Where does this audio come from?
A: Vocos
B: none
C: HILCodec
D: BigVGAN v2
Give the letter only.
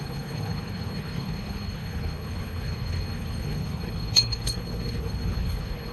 C